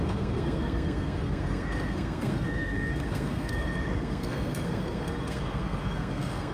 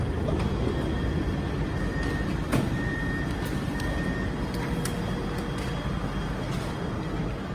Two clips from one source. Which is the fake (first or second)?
first